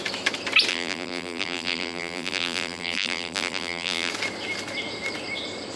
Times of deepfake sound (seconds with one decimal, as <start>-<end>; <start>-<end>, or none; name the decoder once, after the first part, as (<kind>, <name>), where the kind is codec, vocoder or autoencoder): 0.7-4.1 (vocoder, BigVGAN v2)